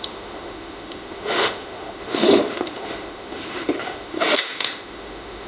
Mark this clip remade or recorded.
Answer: remade